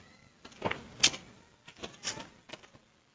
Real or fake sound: real